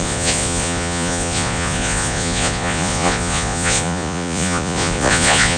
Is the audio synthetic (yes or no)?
yes